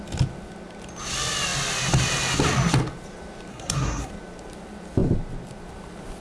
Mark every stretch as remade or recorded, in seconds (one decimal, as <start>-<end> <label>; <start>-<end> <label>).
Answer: 0.0-3.5 recorded; 3.5-4.1 remade; 4.1-6.2 recorded